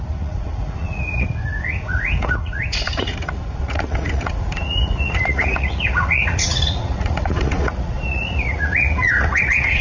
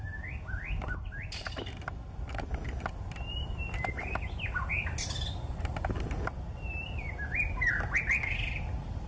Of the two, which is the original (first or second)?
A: second